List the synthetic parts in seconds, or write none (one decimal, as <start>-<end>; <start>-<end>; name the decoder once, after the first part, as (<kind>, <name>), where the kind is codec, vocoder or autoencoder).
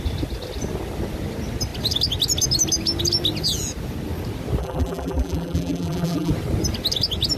4.6-6.3 (vocoder, BigVGAN v2)